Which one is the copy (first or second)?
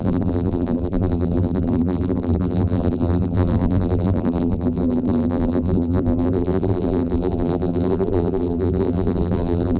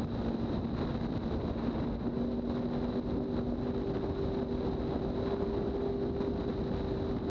first